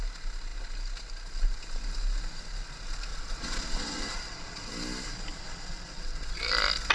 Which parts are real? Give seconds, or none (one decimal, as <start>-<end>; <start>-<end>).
0.0-3.1; 4.7-5.3; 6.4-6.9